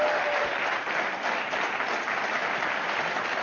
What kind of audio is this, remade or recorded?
recorded